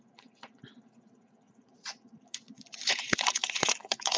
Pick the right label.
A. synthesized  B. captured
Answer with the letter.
A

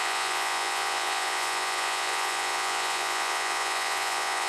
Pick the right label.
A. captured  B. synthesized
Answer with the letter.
B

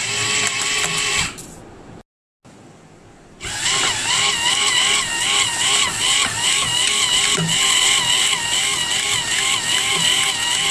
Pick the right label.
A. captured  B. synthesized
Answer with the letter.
A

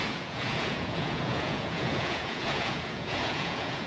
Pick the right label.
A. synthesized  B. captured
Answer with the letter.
A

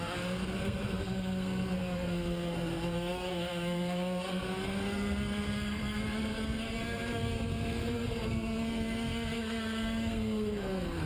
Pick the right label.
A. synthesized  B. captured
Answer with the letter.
A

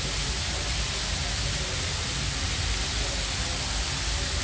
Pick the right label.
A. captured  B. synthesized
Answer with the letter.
A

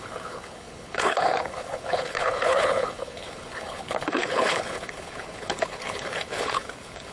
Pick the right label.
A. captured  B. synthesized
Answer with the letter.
B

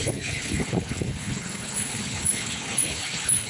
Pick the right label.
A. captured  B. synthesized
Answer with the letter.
B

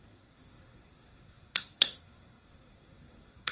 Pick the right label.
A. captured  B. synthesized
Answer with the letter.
B